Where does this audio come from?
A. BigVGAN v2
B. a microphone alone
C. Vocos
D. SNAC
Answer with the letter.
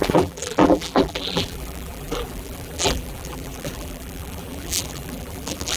A